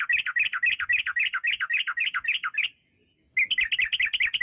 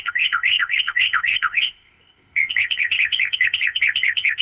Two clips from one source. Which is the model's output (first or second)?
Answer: second